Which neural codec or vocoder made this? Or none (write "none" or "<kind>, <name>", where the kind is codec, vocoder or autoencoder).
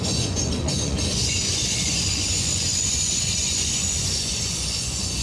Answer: vocoder, Vocos